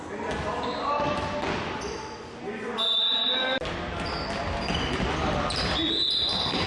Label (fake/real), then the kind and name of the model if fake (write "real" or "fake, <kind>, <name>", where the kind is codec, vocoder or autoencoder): real